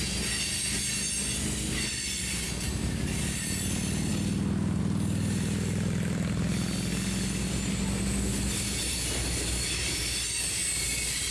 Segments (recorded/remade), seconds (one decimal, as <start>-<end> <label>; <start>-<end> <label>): 0.0-11.3 recorded